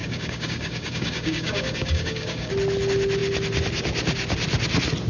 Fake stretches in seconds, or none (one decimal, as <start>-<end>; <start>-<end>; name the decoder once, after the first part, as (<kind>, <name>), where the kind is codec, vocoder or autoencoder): 0.0-2.5 (codec, DAC)